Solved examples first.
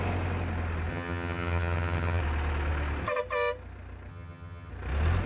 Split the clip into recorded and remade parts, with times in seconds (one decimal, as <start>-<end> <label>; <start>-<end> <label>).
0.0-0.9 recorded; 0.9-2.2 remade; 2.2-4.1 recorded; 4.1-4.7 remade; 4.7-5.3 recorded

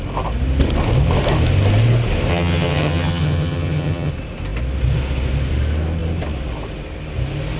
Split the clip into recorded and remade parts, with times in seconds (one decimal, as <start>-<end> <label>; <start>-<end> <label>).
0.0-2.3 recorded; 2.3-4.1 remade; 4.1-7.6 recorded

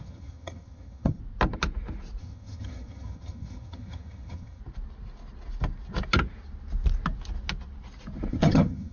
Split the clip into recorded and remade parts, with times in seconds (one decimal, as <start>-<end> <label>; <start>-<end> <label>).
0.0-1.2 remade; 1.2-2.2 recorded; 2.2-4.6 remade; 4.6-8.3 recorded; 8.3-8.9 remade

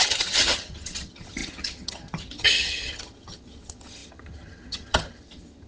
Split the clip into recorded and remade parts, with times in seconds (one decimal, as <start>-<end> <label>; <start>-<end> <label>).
0.0-5.7 remade

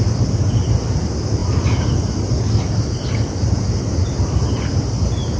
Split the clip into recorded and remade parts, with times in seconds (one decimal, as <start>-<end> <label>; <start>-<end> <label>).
0.0-5.4 recorded

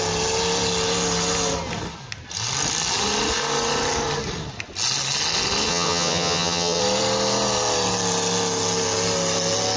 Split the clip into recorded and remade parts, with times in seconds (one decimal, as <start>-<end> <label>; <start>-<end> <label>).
0.0-5.7 recorded; 5.7-6.8 remade; 6.8-9.8 recorded